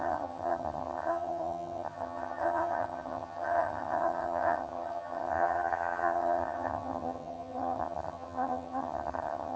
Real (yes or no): no